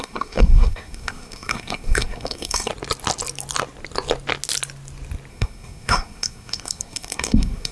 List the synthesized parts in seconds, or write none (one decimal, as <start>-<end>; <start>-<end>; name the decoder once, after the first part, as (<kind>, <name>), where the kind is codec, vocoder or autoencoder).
0.0-2.7 (codec, SNAC); 5.3-7.7

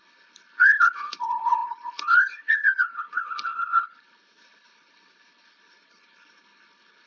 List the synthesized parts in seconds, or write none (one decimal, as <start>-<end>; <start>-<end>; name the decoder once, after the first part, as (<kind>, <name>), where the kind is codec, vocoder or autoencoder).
0.0-7.1 (codec, HILCodec)

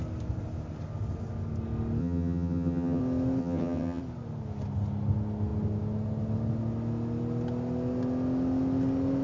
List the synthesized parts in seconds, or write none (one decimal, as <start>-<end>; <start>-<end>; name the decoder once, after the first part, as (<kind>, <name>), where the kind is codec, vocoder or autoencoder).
2.0-3.0 (vocoder, HiFi-GAN); 3.4-4.0

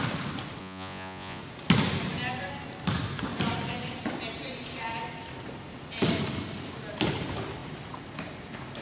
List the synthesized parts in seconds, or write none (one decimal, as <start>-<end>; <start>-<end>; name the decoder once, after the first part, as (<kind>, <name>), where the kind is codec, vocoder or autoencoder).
0.6-1.4 (vocoder, Vocos)

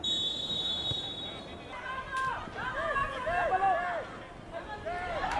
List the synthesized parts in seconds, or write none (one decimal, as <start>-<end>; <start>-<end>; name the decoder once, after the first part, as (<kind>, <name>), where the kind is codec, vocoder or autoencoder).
0.0-1.5 (vocoder, BigVGAN v2); 4.7-5.4

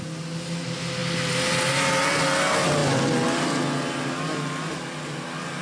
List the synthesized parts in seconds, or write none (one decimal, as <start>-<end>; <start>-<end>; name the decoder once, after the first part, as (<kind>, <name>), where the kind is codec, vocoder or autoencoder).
none